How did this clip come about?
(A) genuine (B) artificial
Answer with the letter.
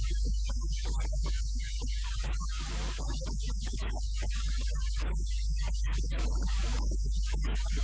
B